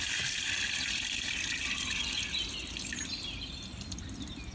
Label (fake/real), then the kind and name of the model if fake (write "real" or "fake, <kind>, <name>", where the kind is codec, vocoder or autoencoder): real